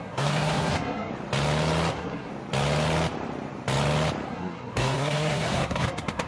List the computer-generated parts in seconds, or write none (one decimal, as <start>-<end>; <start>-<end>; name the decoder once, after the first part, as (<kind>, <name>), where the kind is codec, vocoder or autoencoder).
0.0-1.1 (codec, SNAC); 1.9-2.3; 4.3-6.3